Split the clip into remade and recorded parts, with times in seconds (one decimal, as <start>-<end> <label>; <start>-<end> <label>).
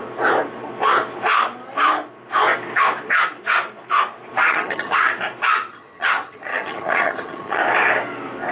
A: 0.0-4.5 recorded; 4.5-5.1 remade; 5.1-5.7 recorded; 5.7-7.6 remade; 7.6-8.5 recorded